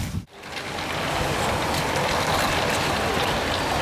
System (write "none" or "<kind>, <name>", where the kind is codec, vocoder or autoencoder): none